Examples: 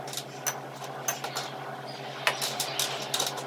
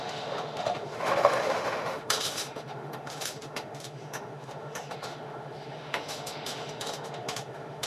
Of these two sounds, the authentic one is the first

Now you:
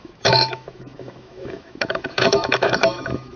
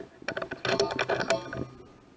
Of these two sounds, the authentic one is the second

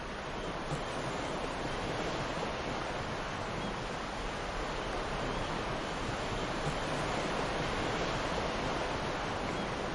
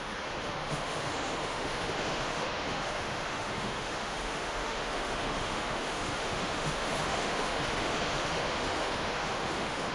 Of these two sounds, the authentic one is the first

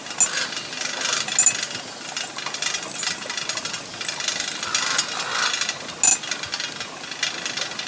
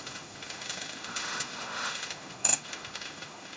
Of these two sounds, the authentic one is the first